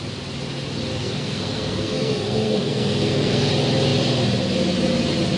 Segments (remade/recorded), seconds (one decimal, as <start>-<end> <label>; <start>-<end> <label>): 0.0-0.9 recorded; 0.9-3.5 remade; 3.5-5.4 recorded